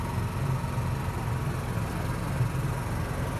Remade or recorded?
recorded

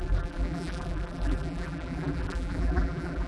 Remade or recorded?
remade